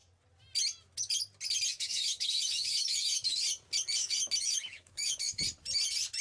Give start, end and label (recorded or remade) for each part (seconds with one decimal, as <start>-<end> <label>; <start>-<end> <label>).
0.0-1.7 recorded; 1.7-3.4 remade; 3.4-4.0 recorded; 4.0-5.4 remade; 5.4-6.2 recorded